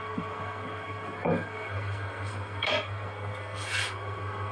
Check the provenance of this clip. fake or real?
fake